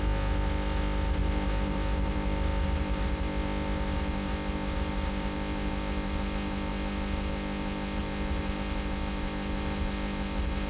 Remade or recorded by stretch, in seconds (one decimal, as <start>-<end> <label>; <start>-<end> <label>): 0.0-10.7 remade